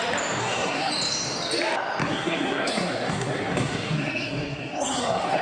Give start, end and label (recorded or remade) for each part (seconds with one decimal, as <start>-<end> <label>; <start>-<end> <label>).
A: 0.0-0.4 recorded; 0.4-0.9 remade; 0.9-2.0 recorded; 2.0-5.4 remade